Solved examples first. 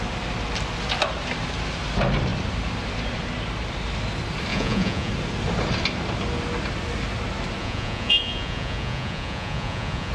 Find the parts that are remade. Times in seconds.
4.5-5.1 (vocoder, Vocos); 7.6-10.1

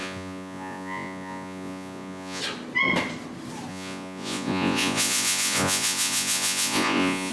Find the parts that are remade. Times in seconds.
0.0-2.4 (vocoder, Vocos); 3.7-7.3

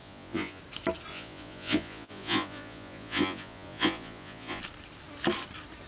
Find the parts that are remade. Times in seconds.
0.0-0.6 (vocoder, Vocos); 1.1-4.6

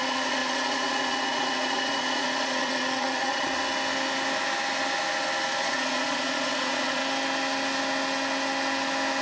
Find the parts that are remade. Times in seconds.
0.0-3.6 (vocoder, Vocos); 5.6-7.0

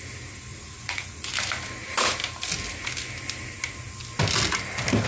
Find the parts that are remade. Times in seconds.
0.5-1.3 (vocoder, Vocos)